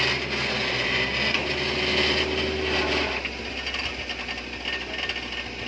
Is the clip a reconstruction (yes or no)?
no